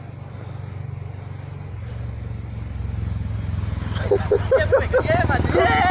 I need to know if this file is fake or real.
real